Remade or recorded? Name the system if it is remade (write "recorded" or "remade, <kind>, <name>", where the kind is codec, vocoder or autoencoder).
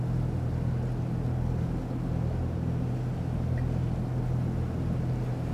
recorded